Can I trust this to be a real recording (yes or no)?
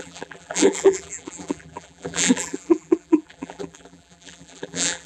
no